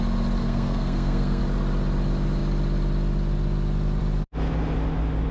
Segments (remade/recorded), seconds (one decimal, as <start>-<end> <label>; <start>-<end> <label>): 0.0-0.4 recorded; 0.4-1.4 remade; 1.4-5.3 recorded